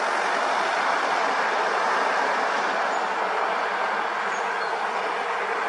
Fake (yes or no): no